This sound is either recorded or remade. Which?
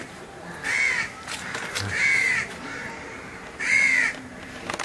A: remade